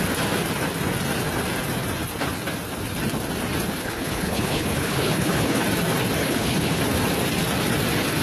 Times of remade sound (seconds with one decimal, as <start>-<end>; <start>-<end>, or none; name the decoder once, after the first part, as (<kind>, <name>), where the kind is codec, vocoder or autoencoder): 3.8-5.6 (codec, HILCodec); 6.2-6.8